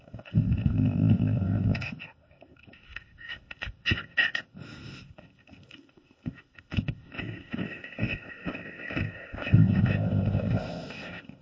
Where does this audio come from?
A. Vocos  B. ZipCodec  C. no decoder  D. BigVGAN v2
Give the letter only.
B